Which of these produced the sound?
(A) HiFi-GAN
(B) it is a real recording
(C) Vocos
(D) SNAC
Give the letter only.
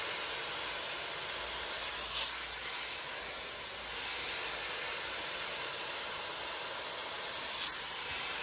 B